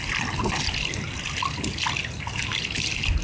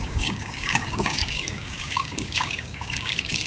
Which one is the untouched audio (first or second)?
first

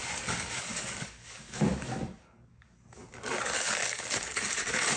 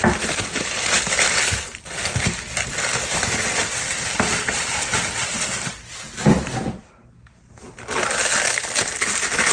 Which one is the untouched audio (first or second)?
second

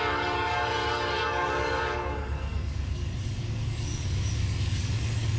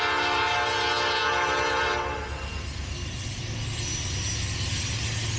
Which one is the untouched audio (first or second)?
second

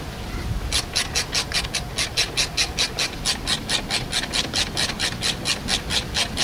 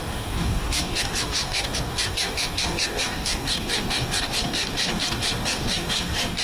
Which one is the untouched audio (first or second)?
first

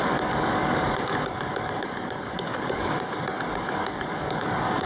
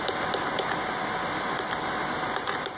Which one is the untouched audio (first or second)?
second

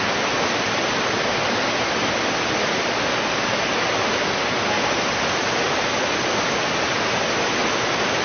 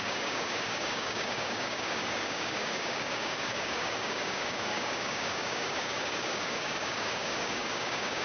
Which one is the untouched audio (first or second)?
first